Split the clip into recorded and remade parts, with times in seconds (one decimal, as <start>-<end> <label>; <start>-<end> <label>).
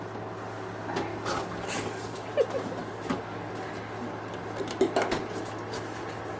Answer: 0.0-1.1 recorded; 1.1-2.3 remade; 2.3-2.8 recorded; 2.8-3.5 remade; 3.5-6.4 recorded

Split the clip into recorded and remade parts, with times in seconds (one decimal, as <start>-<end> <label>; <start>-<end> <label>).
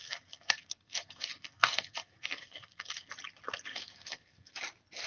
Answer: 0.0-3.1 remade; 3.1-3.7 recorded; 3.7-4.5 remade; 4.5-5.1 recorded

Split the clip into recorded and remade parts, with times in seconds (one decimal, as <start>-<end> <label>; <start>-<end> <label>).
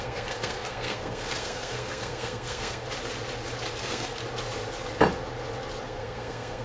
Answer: 0.0-2.8 remade; 2.8-3.8 recorded; 3.8-4.2 remade; 4.2-5.8 recorded; 5.8-6.6 remade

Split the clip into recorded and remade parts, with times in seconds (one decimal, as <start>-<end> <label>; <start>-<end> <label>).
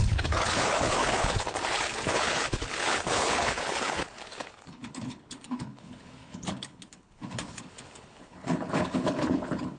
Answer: 0.0-9.8 remade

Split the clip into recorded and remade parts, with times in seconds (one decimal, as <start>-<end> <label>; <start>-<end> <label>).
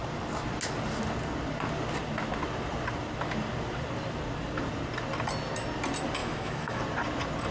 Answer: 0.0-6.2 recorded; 6.2-6.8 remade; 6.8-7.5 recorded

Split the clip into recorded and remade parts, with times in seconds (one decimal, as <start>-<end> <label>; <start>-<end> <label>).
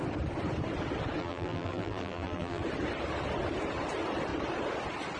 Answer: 0.0-1.2 recorded; 1.2-2.6 remade; 2.6-5.2 recorded